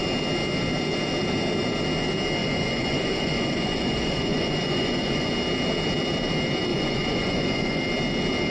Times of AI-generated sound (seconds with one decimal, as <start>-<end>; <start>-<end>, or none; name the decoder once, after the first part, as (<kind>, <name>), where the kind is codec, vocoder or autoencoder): 2.4-5.3 (vocoder, Vocos); 6.7-7.8